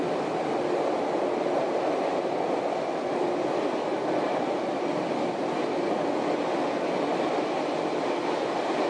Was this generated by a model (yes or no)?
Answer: no